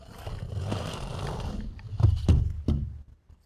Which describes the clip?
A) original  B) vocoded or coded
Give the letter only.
A